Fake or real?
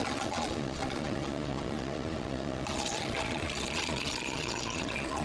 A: fake